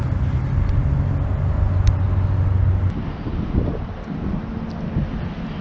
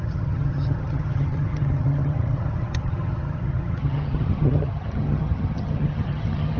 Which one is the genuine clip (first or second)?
first